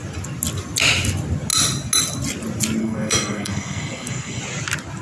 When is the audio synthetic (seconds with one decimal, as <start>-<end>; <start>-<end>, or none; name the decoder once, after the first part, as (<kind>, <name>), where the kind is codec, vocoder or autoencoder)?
2.8-4.4 (codec, SNAC)